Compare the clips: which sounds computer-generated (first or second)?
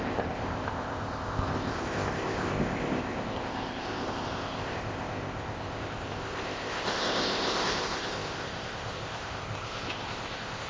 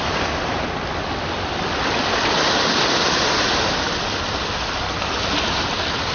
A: first